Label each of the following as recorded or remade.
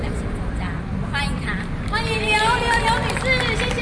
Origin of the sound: recorded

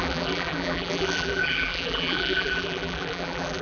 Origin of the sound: remade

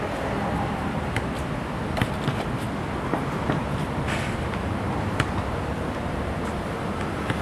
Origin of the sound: remade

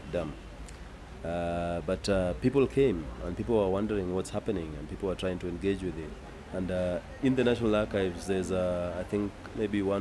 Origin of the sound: recorded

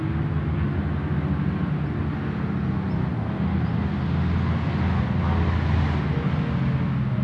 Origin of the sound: recorded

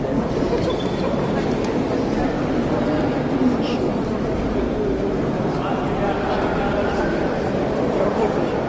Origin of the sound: recorded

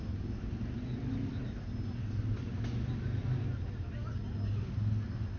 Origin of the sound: recorded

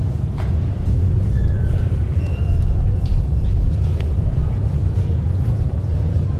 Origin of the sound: remade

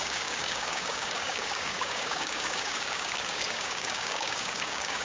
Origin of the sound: remade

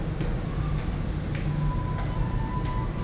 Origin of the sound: recorded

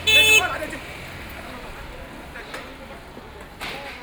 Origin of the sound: recorded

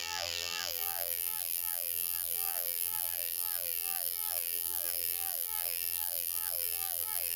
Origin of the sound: remade